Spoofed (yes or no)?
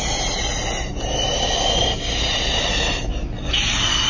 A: no